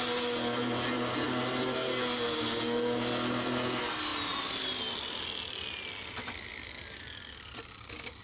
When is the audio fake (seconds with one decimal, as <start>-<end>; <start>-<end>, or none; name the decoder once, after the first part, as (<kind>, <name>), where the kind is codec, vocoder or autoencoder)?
none